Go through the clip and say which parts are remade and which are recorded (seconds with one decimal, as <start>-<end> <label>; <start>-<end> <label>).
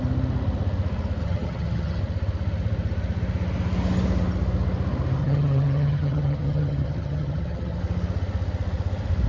0.0-1.2 recorded; 1.2-2.0 remade; 2.0-5.2 recorded; 5.2-7.8 remade; 7.8-9.3 recorded